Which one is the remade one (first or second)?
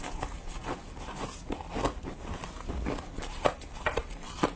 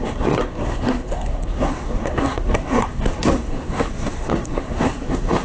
second